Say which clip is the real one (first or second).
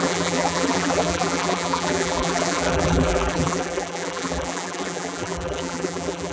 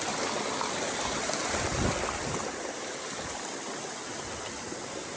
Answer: second